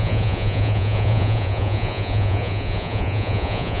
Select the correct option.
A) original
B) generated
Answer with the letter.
B